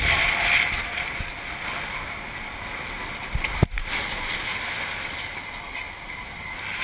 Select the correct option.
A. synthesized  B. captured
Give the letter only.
B